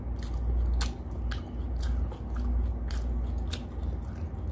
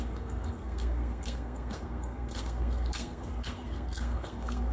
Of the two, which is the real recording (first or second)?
first